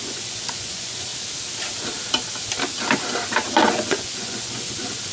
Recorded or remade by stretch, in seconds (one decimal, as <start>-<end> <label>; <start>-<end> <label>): 0.0-1.1 remade; 1.1-3.5 recorded; 3.5-5.1 remade